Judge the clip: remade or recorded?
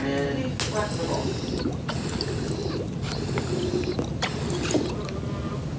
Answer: recorded